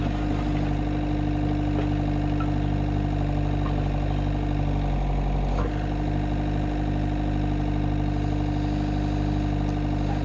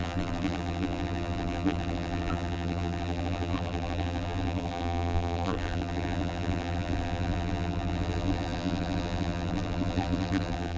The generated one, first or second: second